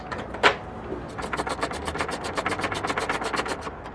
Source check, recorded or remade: recorded